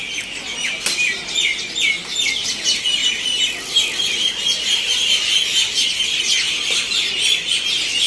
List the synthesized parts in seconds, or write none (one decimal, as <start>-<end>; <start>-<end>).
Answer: none